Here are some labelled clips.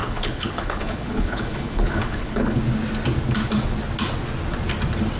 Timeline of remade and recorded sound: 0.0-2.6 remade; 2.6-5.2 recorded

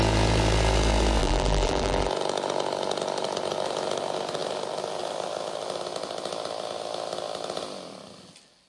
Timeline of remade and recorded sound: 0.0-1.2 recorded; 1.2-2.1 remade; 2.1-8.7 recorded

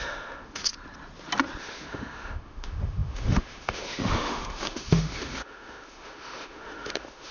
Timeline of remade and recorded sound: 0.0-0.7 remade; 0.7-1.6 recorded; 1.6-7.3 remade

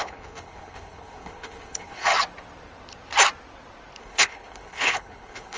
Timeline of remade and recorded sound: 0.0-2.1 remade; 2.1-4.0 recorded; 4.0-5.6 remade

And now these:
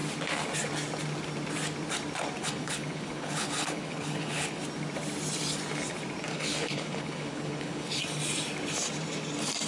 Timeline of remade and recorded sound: 0.0-2.4 recorded; 2.4-4.6 remade; 4.6-6.3 recorded; 6.3-8.0 remade; 8.0-9.7 recorded

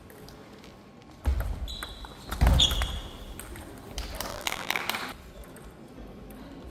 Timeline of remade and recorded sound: 0.0-4.3 recorded; 4.3-4.8 remade; 4.8-6.7 recorded